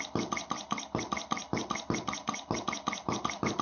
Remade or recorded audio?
recorded